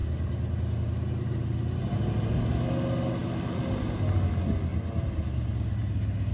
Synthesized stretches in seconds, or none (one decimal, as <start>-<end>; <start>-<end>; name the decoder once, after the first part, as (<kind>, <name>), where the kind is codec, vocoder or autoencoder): none